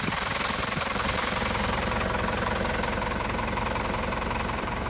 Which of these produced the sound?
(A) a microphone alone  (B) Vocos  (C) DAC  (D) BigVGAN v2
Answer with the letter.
D